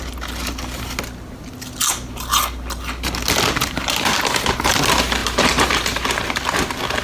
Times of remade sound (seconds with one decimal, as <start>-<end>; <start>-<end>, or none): 3.6-4.7; 5.2-6.2